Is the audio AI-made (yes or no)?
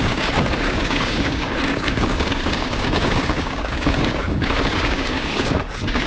yes